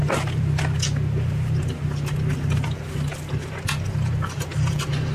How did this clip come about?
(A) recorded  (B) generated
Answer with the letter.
A